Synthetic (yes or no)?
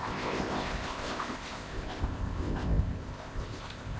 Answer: yes